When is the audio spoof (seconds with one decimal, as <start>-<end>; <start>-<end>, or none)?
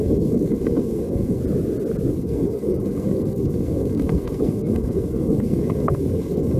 0.0-1.4; 2.1-6.6